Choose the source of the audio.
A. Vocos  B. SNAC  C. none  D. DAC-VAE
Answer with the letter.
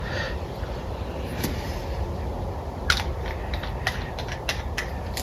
C